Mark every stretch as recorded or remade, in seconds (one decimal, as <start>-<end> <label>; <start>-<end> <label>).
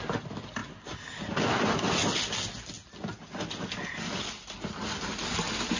0.0-5.8 recorded